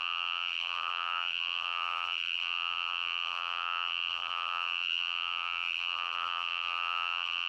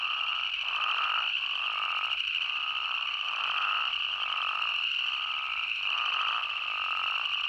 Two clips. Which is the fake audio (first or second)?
first